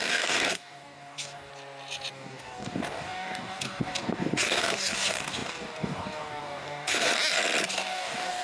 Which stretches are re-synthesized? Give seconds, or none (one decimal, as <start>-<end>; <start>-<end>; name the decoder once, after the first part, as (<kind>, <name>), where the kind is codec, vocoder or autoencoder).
0.0-1.5 (codec, DAC); 2.1-7.1; 7.7-8.4

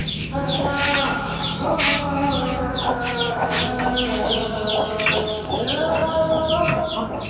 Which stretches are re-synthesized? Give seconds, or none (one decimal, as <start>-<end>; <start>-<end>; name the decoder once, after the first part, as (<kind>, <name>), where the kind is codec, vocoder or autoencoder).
0.0-4.2 (autoencoder, DAC-VAE)